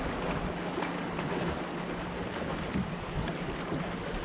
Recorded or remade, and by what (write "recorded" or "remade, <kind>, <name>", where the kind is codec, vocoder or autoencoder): recorded